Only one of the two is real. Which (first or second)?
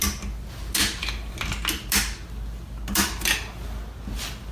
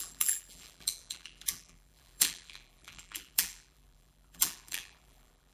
first